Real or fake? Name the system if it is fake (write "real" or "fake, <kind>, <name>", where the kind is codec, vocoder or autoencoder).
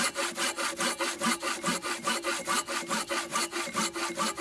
real